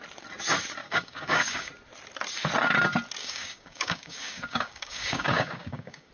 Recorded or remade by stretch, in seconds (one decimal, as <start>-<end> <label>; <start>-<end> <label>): 0.0-0.8 recorded; 0.8-1.7 remade; 1.7-3.2 recorded; 3.2-6.1 remade